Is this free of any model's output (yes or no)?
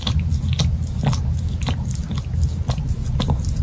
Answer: yes